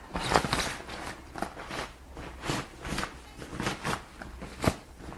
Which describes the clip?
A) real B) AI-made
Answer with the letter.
A